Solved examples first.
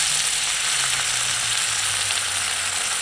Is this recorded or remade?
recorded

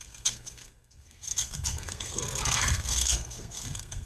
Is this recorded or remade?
remade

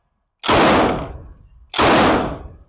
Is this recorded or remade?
recorded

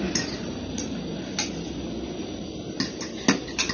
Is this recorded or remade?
recorded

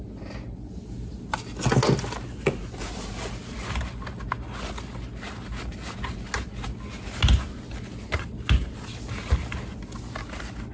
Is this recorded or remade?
recorded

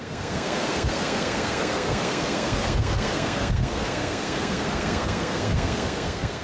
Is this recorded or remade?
remade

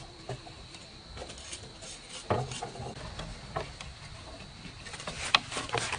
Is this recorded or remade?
recorded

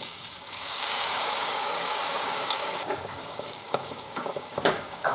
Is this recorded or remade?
remade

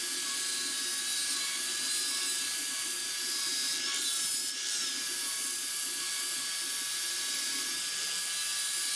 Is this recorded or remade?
recorded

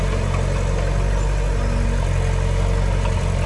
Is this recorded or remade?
recorded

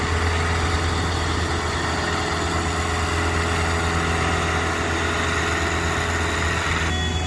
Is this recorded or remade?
recorded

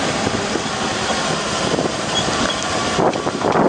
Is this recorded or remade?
recorded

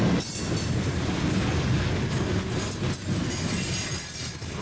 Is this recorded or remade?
recorded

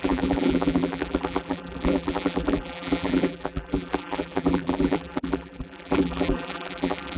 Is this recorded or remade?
remade